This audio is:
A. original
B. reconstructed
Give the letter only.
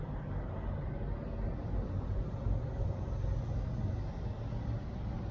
A